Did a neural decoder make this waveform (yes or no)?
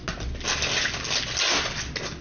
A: no